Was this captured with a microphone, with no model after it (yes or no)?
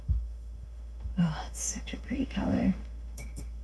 no